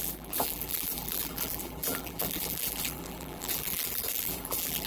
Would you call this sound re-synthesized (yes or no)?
yes